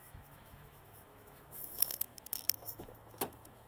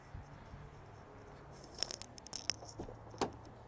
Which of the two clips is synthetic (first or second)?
first